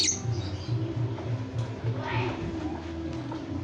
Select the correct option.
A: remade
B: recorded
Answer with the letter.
B